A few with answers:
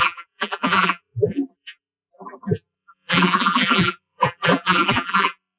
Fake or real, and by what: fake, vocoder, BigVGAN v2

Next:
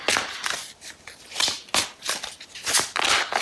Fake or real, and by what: real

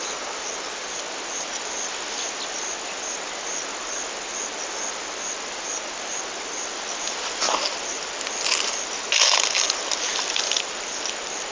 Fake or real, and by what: real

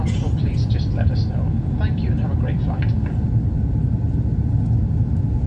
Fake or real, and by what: fake, vocoder, BigVGAN v2